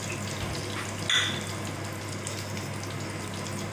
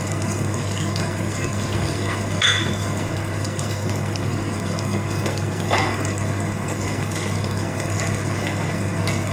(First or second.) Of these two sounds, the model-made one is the second